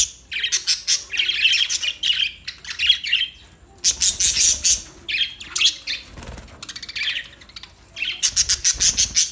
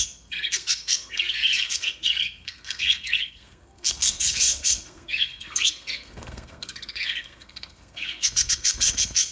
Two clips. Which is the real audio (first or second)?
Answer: first